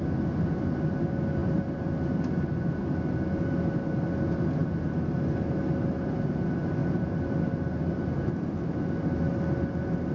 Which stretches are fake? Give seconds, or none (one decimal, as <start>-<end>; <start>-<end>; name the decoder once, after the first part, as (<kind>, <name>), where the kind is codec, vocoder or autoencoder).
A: 1.4-2.2 (vocoder, BigVGAN v2); 6.8-7.8